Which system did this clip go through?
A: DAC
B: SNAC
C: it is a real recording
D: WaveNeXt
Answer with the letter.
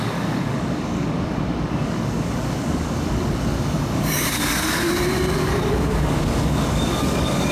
A